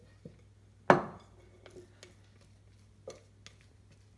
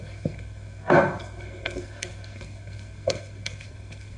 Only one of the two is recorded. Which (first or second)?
first